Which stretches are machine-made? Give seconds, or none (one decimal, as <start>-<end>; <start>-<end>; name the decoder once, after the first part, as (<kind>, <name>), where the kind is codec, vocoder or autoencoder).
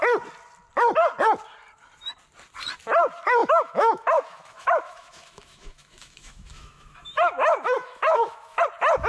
3.4-8.6 (autoencoder, DAC-VAE)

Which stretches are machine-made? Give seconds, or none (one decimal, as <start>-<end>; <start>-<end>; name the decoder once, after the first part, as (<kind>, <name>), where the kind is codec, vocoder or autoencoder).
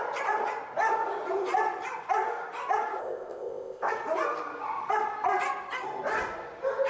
3.0-3.9 (codec, ZipCodec)